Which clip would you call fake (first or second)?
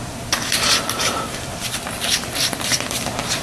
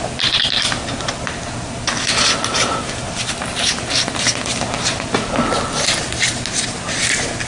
first